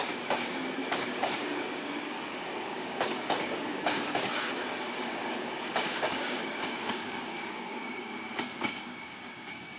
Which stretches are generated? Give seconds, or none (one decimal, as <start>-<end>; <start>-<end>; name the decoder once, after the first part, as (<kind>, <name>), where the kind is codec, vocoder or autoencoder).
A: 0.0-9.8 (codec, DAC)